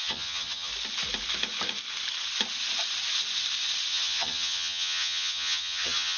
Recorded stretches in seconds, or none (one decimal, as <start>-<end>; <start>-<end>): 0.7-3.9

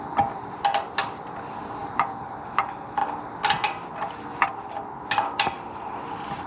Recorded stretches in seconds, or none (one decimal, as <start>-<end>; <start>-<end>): 0.0-6.5

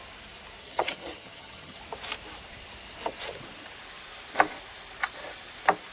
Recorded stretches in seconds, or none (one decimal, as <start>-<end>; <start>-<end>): 0.0-0.6; 1.8-5.9

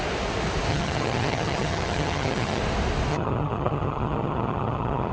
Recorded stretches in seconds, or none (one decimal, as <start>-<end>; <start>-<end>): 0.0-0.7; 2.6-3.1

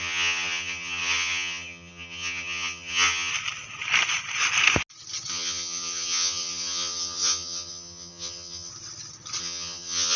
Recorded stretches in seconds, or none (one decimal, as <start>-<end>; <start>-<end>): 3.3-5.3; 8.7-9.4

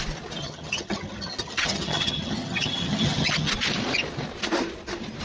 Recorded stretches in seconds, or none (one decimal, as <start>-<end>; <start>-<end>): 0.0-0.4; 3.5-5.2

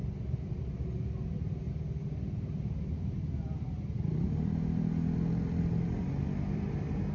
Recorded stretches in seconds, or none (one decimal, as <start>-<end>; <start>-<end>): 0.0-7.1